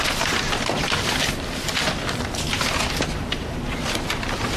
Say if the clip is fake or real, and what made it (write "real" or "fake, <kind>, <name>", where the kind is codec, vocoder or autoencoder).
real